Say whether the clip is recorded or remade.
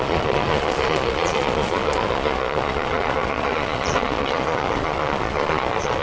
remade